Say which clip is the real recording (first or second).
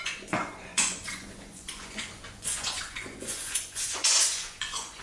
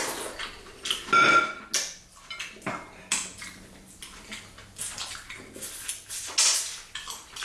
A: second